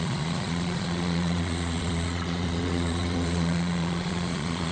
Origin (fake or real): fake